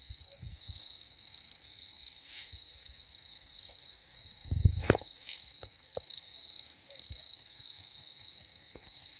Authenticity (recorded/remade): remade